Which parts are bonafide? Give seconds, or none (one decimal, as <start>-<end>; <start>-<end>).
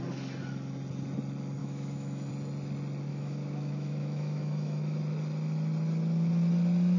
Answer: 0.0-1.6; 2.3-3.1; 5.0-7.0